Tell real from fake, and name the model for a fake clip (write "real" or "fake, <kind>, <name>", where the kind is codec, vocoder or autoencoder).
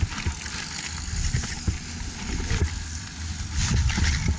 real